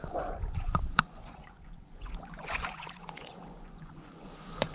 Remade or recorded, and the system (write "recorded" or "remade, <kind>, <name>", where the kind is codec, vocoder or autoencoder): remade, vocoder, Vocos